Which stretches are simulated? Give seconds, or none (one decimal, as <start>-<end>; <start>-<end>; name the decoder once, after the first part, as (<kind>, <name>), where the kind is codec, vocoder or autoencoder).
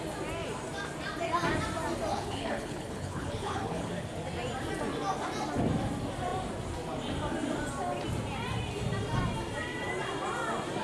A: 2.1-3.9 (codec, HILCodec)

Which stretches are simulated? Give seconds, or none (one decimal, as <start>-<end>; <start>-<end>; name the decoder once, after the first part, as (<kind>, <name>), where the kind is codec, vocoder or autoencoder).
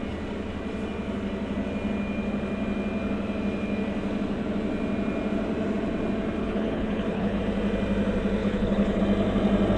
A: 6.4-7.4 (codec, HILCodec); 8.4-9.0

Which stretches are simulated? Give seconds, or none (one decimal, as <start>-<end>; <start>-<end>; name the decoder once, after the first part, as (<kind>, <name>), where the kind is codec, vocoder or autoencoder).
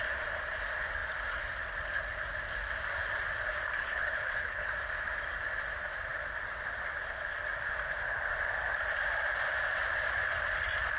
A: 3.8-4.7 (codec, HILCodec)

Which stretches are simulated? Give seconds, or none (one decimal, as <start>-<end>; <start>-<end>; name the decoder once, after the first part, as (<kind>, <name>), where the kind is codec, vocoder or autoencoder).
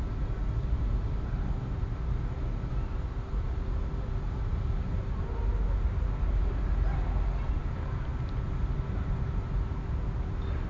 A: none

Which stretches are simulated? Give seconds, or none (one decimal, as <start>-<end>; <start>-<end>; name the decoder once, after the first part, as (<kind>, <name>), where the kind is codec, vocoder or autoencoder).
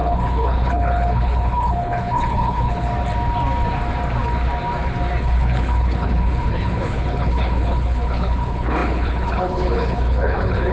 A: 0.0-2.9 (codec, HILCodec); 5.2-10.7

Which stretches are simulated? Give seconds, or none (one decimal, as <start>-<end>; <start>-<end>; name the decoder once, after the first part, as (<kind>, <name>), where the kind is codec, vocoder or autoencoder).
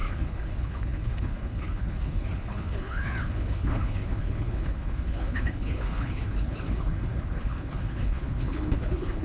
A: 0.0-9.2 (codec, HILCodec)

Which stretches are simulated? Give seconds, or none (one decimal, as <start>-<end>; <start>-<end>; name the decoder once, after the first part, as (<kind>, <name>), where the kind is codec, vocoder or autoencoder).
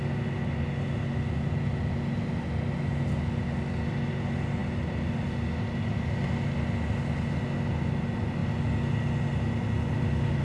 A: none